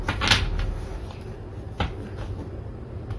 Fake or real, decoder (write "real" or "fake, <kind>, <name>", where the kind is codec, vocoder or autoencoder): real